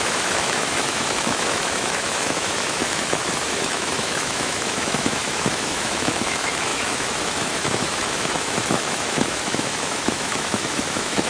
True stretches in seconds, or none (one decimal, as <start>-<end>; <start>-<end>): none